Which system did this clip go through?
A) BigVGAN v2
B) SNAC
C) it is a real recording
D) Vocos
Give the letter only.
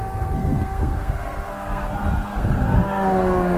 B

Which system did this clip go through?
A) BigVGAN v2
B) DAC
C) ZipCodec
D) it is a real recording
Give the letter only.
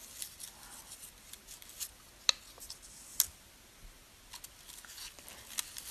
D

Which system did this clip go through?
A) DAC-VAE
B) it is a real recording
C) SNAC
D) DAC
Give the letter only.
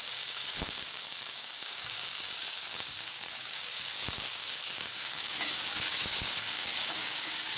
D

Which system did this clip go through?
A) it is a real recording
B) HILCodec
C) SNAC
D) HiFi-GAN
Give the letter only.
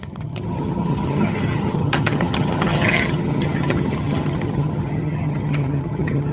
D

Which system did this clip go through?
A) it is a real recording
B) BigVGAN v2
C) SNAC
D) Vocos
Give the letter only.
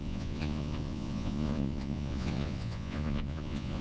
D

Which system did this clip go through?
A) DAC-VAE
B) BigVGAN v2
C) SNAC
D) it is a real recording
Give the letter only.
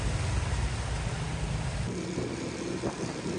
D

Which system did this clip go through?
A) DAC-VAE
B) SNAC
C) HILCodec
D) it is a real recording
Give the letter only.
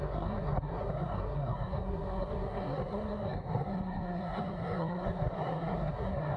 B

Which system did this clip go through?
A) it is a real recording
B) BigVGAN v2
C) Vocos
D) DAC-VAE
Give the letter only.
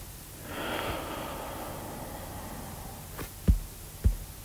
A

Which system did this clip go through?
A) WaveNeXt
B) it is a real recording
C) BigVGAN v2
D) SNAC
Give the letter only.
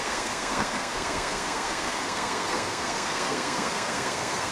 D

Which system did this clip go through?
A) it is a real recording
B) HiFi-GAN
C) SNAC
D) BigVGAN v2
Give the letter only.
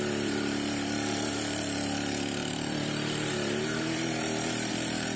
D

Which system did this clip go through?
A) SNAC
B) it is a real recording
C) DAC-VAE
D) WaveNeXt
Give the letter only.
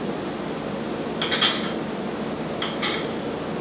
B